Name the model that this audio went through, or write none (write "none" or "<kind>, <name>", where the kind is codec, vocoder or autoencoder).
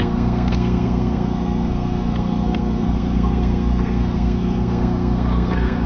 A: codec, SNAC